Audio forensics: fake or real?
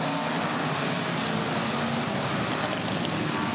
real